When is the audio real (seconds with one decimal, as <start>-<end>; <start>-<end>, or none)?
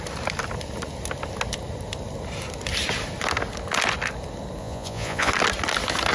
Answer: 0.0-4.6; 5.3-6.1